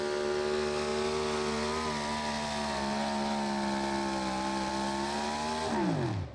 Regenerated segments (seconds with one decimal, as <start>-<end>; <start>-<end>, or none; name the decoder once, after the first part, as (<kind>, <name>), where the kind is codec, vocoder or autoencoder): none